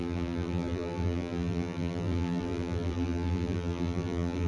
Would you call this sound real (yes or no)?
no